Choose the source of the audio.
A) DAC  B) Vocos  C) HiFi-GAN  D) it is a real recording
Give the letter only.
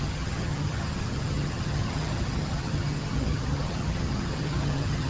C